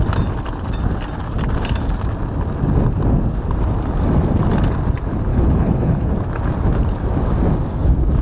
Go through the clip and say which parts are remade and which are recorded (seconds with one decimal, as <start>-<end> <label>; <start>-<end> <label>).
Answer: 0.0-5.3 recorded; 5.3-6.0 remade; 6.0-8.2 recorded